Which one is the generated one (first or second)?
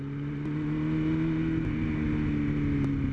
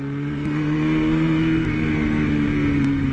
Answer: second